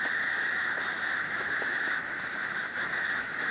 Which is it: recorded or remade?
remade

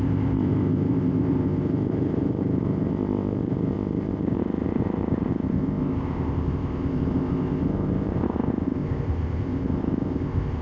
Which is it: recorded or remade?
remade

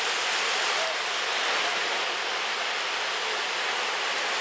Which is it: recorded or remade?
recorded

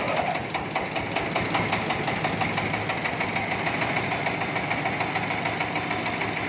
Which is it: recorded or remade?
recorded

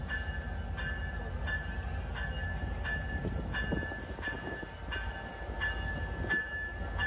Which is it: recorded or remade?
recorded